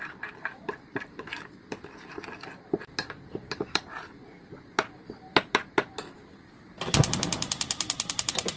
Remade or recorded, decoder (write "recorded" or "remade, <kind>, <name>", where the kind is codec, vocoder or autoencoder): remade, vocoder, BigVGAN v2